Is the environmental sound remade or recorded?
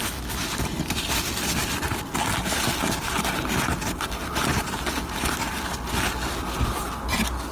recorded